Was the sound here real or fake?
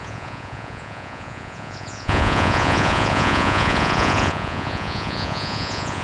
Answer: fake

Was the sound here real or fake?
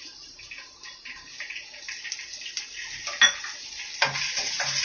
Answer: real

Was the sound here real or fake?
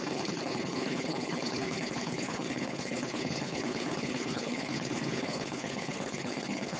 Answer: fake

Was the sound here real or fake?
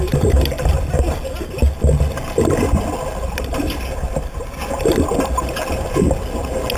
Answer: real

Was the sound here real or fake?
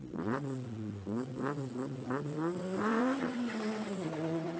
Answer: fake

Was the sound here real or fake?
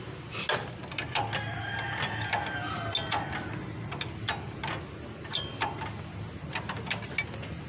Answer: real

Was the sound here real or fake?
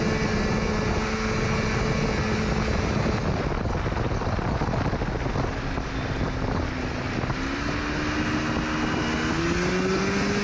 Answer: real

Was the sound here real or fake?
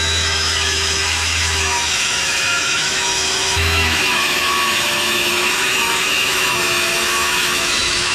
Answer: fake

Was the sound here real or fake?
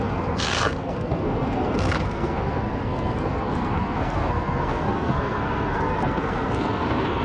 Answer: fake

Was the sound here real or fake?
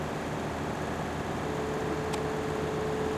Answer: real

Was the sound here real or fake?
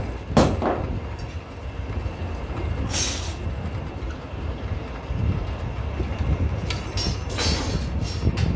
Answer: real